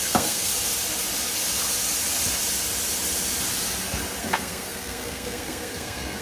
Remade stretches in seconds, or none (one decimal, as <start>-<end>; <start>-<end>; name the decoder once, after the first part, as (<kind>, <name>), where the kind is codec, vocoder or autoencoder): 0.0-0.5 (codec, SNAC); 4.2-6.2